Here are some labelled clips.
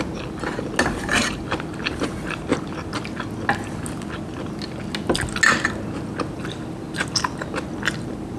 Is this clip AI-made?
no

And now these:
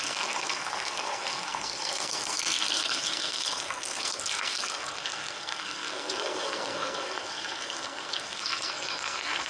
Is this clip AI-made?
yes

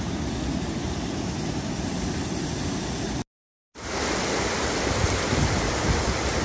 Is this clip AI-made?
no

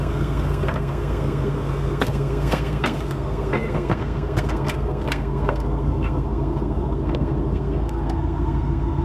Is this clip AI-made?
yes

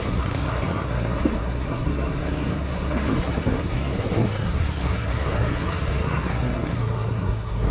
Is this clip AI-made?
yes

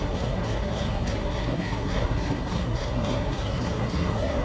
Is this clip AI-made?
yes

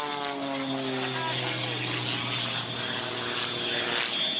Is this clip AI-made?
no